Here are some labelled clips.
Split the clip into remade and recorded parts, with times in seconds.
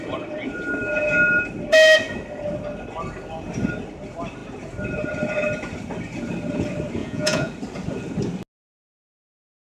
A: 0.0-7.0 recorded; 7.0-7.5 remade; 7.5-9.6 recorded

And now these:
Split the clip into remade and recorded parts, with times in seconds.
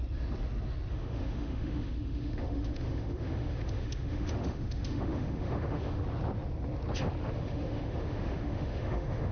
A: 0.0-0.9 recorded; 0.9-6.0 remade; 6.0-7.2 recorded; 7.2-9.3 remade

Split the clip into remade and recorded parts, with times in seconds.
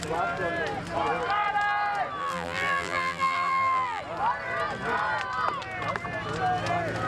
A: 0.0-2.2 recorded; 2.2-4.0 remade; 4.0-7.1 recorded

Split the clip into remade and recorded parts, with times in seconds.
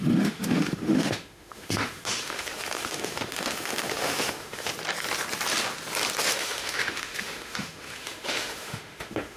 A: 0.0-4.7 remade; 4.7-6.2 recorded; 6.2-9.4 remade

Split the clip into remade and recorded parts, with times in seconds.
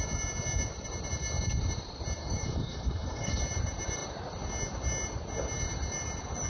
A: 0.0-2.2 recorded; 2.2-3.4 remade; 3.4-6.5 recorded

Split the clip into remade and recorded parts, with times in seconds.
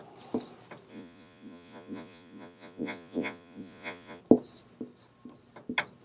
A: 0.0-0.9 recorded; 0.9-4.2 remade; 4.2-6.0 recorded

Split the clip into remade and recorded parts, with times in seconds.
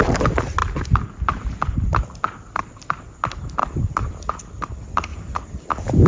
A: 0.0-0.6 recorded; 0.6-2.0 remade; 2.0-3.6 recorded; 3.6-4.3 remade; 4.3-6.1 recorded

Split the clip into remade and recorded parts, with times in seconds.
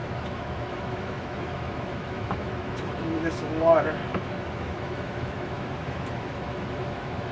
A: 0.0-7.3 remade